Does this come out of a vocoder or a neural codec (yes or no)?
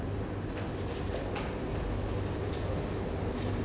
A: no